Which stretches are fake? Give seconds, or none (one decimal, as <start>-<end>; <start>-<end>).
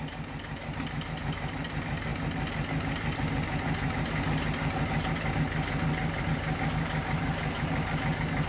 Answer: none